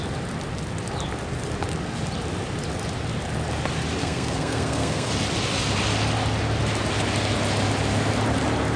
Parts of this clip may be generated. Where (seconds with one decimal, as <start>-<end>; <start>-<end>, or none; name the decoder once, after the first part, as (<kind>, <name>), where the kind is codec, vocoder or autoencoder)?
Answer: 4.0-5.1 (codec, SNAC)